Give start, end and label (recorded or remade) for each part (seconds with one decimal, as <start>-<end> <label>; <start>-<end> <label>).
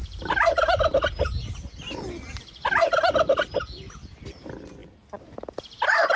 0.0-6.2 recorded